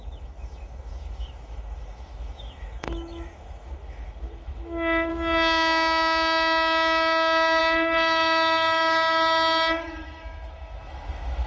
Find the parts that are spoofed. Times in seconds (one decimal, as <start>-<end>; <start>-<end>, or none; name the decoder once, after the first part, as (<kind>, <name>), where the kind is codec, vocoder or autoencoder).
0.0-5.1 (autoencoder, DAC-VAE); 7.6-11.5